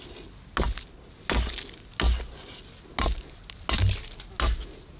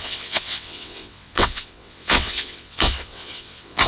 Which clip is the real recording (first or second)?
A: first